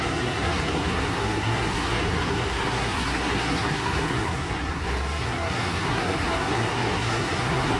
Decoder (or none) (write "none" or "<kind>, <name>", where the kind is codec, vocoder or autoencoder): codec, SNAC